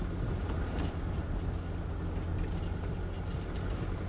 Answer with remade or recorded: recorded